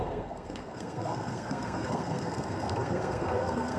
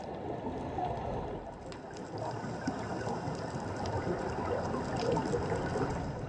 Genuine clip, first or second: second